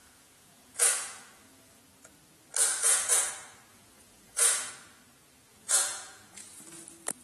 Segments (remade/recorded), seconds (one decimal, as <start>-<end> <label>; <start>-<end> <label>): 0.0-1.8 remade; 1.8-2.7 recorded; 2.7-3.3 remade; 3.3-3.7 recorded; 3.7-4.7 remade; 4.7-5.5 recorded; 5.5-6.6 remade; 6.6-7.2 recorded